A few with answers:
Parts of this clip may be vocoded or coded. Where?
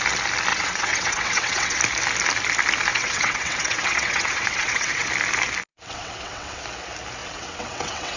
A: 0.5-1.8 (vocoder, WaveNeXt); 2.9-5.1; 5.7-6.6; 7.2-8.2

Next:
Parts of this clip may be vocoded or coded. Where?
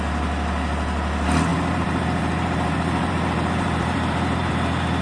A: 1.5-4.5 (vocoder, BigVGAN v2)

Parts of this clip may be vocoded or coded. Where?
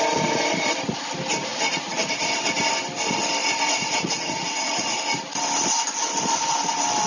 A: 1.5-2.0 (vocoder, Vocos); 3.4-5.0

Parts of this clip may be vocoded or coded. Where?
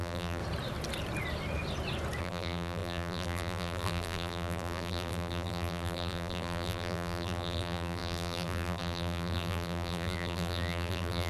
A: 0.0-0.4 (vocoder, BigVGAN v2); 2.2-11.3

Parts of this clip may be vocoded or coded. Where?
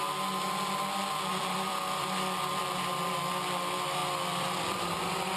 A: 1.3-2.6 (vocoder, BigVGAN v2); 4.0-4.9